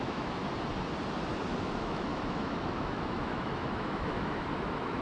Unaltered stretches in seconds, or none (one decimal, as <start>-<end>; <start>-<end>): 0.4-1.6